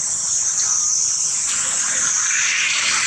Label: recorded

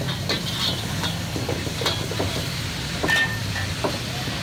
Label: recorded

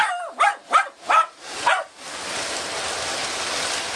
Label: recorded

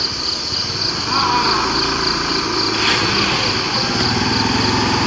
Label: recorded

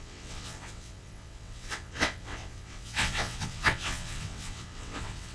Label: remade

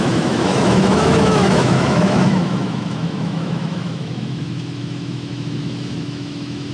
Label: remade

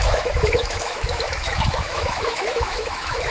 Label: remade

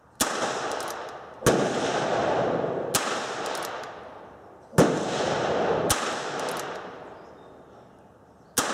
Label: recorded